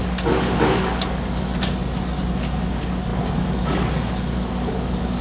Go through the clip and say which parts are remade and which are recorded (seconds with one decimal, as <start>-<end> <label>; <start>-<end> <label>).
0.0-1.5 remade; 1.5-2.3 recorded; 2.3-5.2 remade